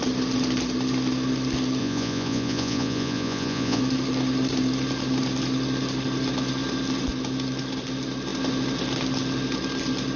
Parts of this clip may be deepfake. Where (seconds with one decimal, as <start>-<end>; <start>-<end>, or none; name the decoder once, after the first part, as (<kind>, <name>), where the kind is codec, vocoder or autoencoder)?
1.8-3.8 (vocoder, Vocos)